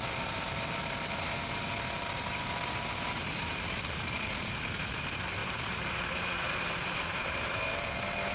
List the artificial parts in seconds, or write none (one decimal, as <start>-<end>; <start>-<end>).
0.0-8.3